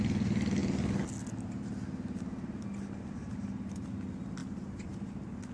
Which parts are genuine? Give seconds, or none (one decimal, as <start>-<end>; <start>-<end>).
0.0-4.4; 5.1-5.5